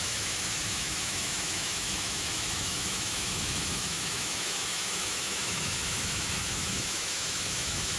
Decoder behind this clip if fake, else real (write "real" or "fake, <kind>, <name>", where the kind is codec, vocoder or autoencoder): fake, autoencoder, DAC-VAE